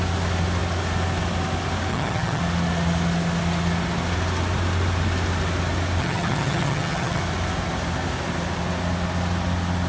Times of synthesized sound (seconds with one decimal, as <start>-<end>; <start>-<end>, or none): 1.9-2.4; 6.0-7.2